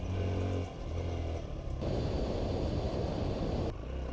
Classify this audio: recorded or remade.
recorded